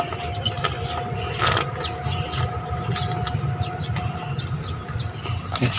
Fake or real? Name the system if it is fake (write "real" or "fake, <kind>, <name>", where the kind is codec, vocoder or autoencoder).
real